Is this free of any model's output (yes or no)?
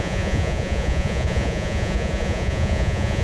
no